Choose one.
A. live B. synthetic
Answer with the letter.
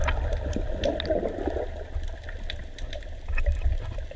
A